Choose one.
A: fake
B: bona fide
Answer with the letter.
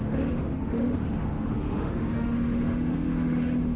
A